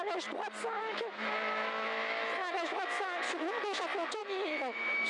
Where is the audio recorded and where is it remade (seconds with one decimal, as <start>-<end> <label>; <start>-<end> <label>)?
0.0-0.8 recorded; 0.8-3.8 remade; 3.8-4.2 recorded; 4.2-5.1 remade